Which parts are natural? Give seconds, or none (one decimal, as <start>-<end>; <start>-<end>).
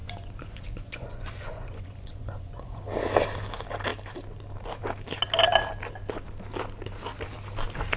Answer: 2.8-8.0